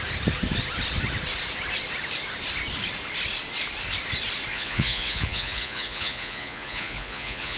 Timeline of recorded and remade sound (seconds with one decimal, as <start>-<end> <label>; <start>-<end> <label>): 0.0-4.5 recorded; 4.5-7.6 remade